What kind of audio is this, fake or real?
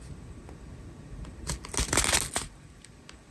real